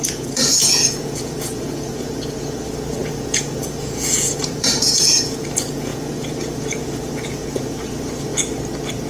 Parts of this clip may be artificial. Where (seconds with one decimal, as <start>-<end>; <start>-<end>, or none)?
0.0-8.3